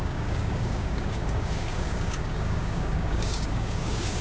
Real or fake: fake